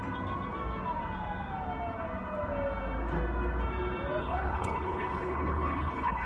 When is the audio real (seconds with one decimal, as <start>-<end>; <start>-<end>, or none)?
0.0-4.2